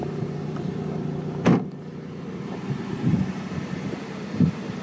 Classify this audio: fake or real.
fake